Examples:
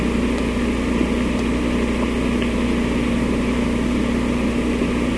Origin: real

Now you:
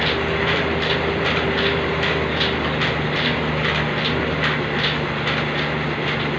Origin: real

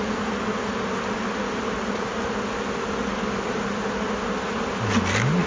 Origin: real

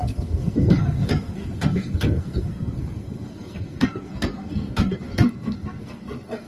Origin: fake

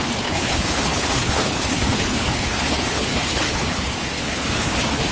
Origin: fake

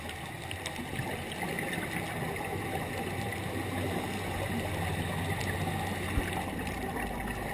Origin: real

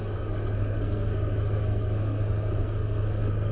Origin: fake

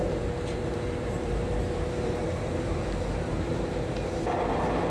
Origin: fake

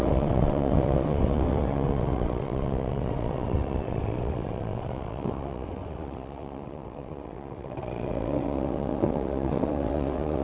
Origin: fake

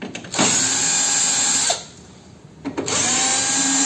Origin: real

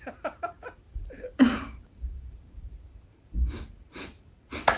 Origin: fake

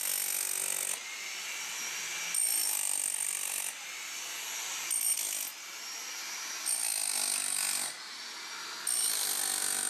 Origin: real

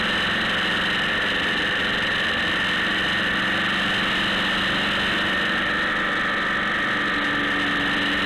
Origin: real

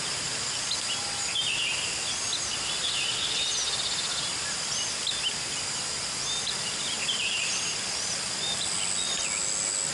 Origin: real